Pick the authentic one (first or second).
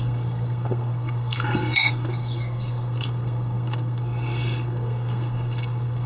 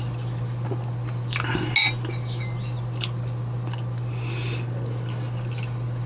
second